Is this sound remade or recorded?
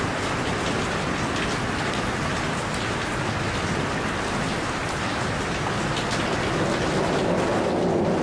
recorded